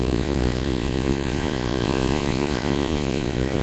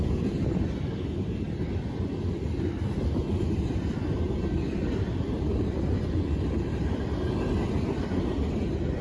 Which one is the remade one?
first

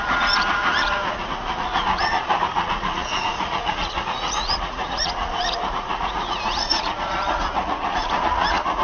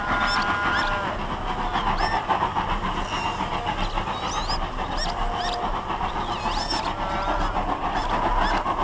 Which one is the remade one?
first